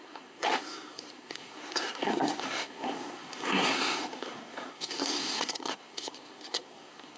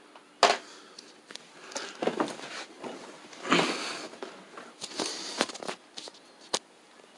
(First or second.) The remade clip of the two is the first